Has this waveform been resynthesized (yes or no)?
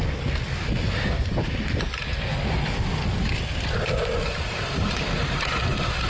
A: no